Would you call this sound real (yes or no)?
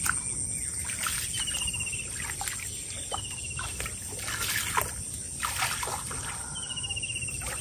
yes